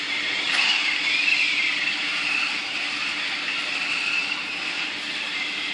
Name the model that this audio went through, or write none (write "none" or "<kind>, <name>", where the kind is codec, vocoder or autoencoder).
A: vocoder, BigVGAN v2